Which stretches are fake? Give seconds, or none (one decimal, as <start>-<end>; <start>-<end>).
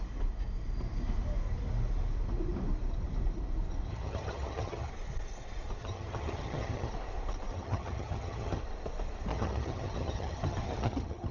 3.9-4.9; 5.8-6.9; 7.5-8.6; 9.3-11.3